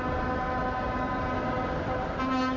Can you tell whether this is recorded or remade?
recorded